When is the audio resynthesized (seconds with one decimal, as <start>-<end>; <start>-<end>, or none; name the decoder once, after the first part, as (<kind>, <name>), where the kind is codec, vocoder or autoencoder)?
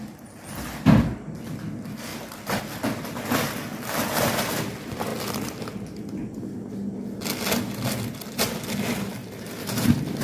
2.1-2.6 (vocoder, BigVGAN v2); 3.7-4.4; 5.1-5.6; 9.2-10.2